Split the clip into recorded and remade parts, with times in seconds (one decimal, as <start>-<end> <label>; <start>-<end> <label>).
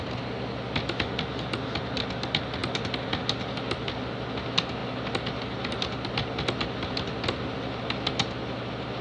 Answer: 0.0-9.0 recorded